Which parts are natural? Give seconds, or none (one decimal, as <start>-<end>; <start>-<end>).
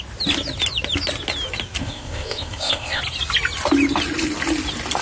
0.0-1.8; 3.0-5.0